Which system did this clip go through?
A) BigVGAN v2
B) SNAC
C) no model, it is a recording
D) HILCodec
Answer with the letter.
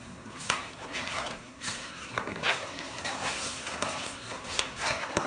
B